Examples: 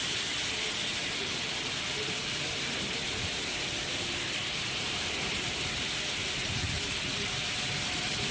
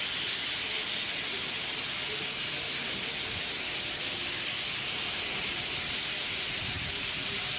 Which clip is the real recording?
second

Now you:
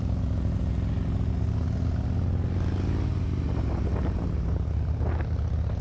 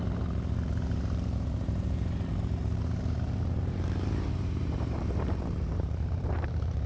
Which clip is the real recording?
first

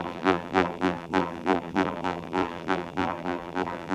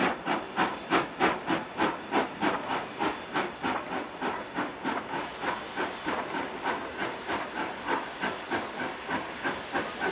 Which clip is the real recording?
second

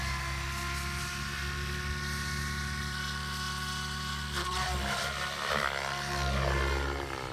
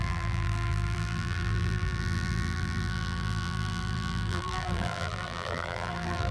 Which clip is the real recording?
first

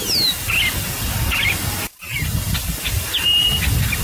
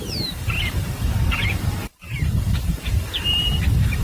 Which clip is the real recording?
first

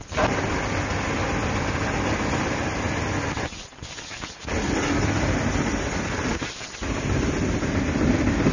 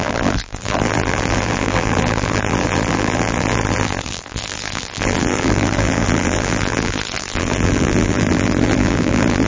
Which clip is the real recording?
first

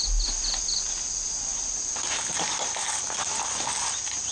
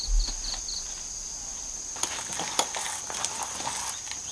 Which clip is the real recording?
first